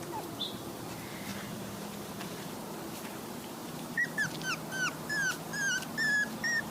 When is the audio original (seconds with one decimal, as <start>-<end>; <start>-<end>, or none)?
0.0-1.3; 2.5-3.6; 4.1-6.7